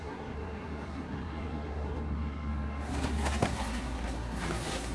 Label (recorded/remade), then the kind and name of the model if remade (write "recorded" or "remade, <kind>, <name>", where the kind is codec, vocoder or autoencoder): remade, codec, SNAC